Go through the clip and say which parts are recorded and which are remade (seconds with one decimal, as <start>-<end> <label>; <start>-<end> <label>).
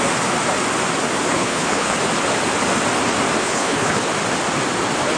0.0-1.3 recorded; 1.3-2.0 remade; 2.0-3.4 recorded; 3.4-4.0 remade; 4.0-5.2 recorded